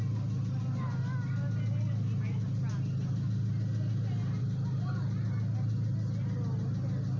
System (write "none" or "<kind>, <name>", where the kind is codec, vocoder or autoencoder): none